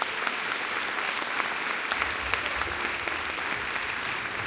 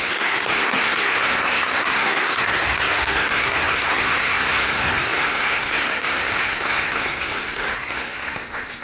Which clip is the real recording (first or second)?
first